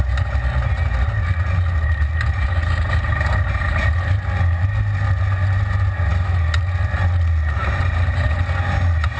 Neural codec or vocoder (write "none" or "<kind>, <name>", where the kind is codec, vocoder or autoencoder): none